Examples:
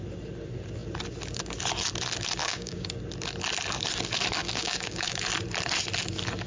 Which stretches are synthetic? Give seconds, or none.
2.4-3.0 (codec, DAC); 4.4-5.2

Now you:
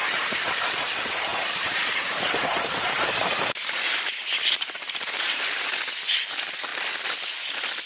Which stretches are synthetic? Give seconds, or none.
1.3-6.0 (vocoder, BigVGAN v2)

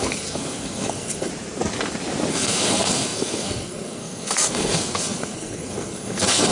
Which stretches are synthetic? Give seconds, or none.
0.0-1.3 (codec, SNAC); 2.3-6.5

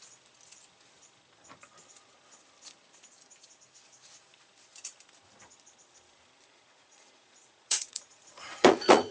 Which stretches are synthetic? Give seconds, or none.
6.5-9.1 (vocoder, Vocos)

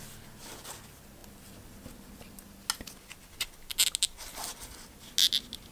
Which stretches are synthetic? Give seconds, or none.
none

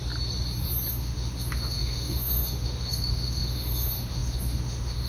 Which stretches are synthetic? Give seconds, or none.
0.9-5.1 (autoencoder, DAC-VAE)

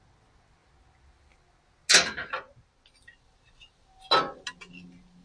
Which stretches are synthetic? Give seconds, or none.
none